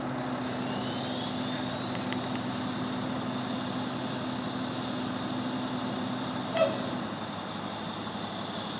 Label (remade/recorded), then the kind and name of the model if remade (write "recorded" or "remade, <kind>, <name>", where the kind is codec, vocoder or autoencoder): recorded